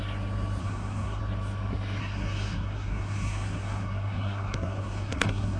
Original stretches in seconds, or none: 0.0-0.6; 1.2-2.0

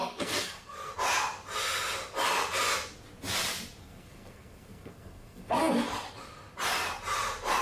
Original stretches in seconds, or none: 0.9-3.8; 5.7-7.6

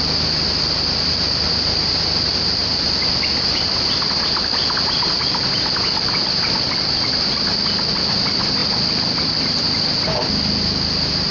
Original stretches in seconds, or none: 0.0-11.3

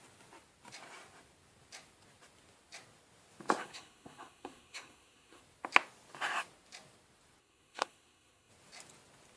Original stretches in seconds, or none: 0.0-3.6; 5.4-7.4; 8.5-9.4